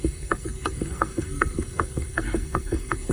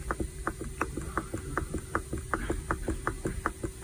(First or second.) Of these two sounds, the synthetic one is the first